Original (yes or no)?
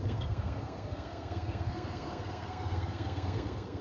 no